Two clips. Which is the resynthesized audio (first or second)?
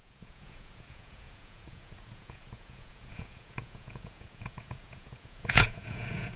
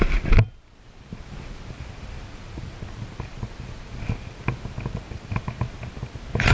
first